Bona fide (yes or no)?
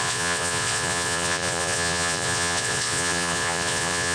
no